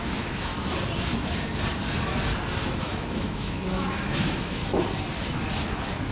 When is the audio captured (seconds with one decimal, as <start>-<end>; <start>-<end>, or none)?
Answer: 0.5-2.8; 4.6-6.1